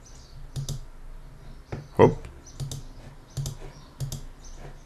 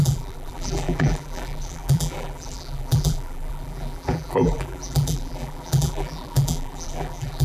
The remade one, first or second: second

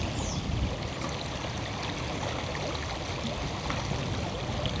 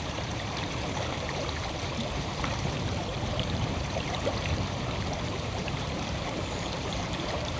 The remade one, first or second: second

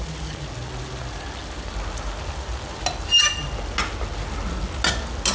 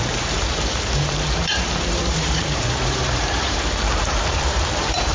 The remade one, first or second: second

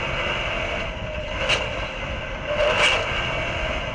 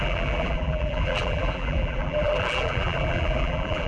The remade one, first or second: second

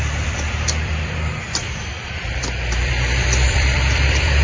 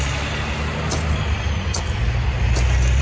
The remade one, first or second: first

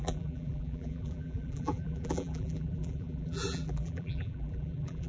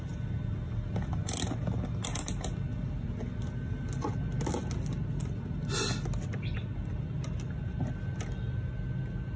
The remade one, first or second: first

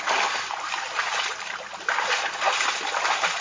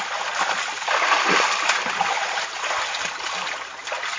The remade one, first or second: second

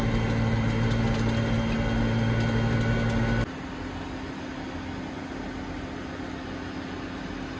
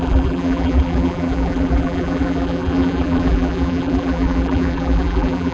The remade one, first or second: second